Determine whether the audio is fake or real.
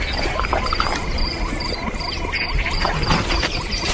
real